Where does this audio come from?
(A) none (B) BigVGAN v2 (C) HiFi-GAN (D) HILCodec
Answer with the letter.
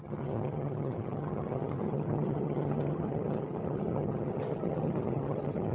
C